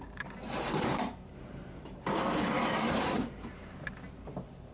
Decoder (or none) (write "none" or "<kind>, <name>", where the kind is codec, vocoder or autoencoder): vocoder, BigVGAN v2